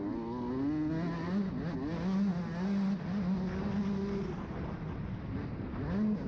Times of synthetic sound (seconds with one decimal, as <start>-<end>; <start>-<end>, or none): none